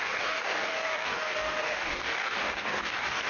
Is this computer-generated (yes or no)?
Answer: yes